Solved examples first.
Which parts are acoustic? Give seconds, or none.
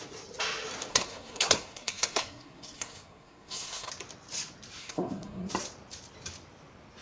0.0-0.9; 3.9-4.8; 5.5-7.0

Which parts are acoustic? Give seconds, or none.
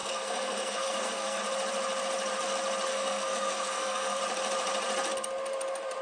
1.4-2.9; 4.2-6.0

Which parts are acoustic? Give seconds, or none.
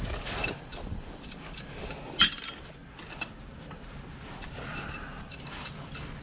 0.0-0.7; 1.9-6.2